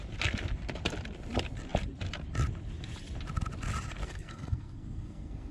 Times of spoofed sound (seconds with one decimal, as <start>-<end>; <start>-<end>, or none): 4.0-5.5